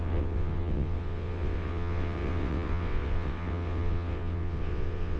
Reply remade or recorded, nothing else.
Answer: remade